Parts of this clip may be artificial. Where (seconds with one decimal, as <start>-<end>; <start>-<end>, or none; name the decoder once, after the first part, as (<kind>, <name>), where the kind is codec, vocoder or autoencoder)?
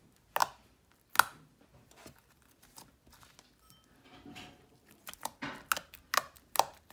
none